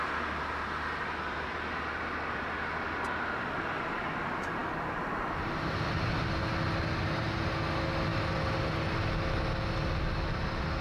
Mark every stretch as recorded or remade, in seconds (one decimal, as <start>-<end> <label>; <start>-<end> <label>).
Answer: 0.0-10.8 recorded